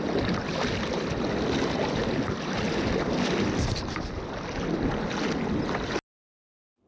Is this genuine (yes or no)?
yes